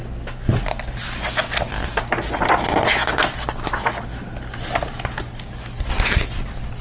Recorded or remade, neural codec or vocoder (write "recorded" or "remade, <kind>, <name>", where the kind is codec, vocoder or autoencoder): recorded